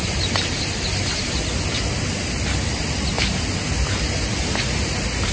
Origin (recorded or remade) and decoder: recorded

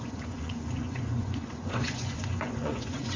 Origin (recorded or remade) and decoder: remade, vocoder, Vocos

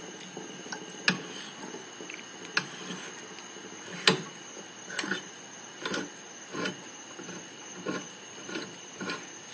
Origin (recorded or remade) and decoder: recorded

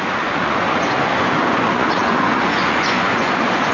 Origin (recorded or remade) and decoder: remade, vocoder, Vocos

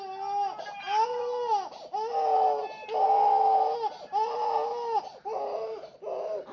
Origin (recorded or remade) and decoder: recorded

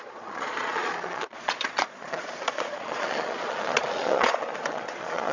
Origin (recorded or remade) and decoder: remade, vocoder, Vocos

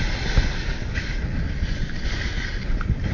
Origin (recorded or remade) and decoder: recorded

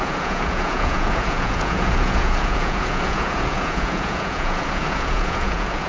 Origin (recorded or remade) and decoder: remade, vocoder, Vocos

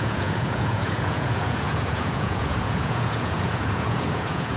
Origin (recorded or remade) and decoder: remade, vocoder, Vocos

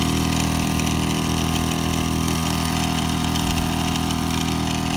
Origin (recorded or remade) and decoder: recorded